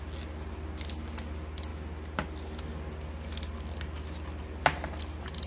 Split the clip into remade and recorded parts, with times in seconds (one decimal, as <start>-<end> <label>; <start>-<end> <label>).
0.0-5.5 recorded